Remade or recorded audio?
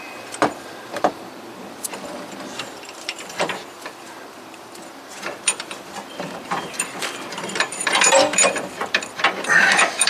remade